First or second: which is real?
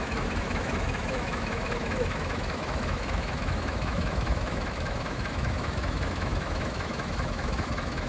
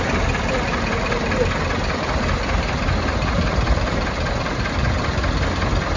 second